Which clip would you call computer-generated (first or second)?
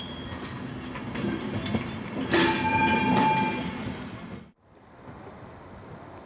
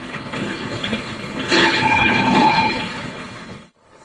second